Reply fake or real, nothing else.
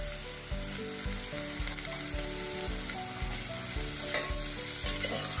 real